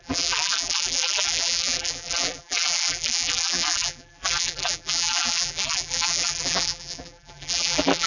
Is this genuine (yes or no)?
no